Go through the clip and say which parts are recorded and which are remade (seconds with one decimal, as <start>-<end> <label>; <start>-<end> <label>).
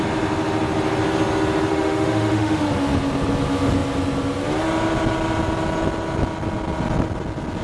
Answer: 0.0-1.7 recorded; 1.7-2.6 remade; 2.6-7.6 recorded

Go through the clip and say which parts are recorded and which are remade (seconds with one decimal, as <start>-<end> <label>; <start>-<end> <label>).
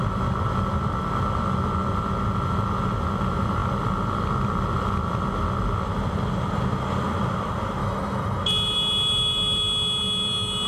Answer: 0.0-7.8 recorded; 7.8-8.4 remade; 8.4-10.7 recorded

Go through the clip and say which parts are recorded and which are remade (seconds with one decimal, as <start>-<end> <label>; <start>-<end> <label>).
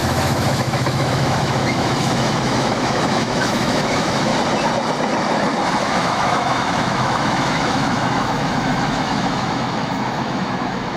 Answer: 0.0-4.3 remade; 4.3-5.8 recorded; 5.8-11.0 remade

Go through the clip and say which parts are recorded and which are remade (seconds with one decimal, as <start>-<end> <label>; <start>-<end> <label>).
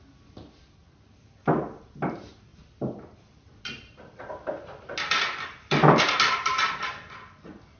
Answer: 0.0-7.8 recorded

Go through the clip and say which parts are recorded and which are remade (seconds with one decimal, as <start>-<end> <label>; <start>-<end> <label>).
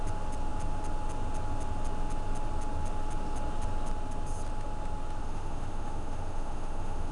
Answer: 0.0-5.2 recorded; 5.2-7.1 remade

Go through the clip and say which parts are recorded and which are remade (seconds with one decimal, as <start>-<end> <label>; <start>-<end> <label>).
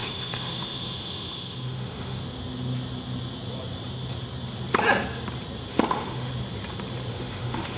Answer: 0.0-2.2 remade; 2.2-5.7 recorded; 5.7-6.3 remade; 6.3-7.1 recorded; 7.1-7.8 remade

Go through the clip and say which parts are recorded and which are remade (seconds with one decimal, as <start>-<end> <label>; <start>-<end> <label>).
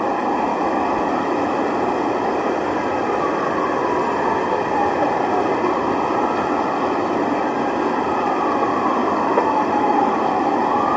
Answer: 0.0-0.5 recorded; 0.5-1.6 remade; 1.6-9.0 recorded; 9.0-10.0 remade; 10.0-11.0 recorded